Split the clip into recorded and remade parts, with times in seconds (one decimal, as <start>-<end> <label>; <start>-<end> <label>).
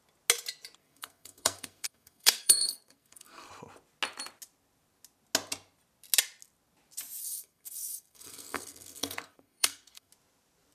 0.0-0.8 recorded; 0.8-3.5 remade; 3.5-7.2 recorded; 7.2-10.1 remade; 10.1-10.7 recorded